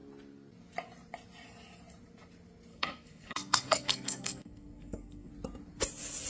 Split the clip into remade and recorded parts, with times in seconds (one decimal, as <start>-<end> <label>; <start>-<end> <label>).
0.0-2.7 recorded; 2.7-5.3 remade; 5.3-6.3 recorded